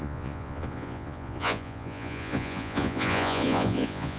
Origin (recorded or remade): remade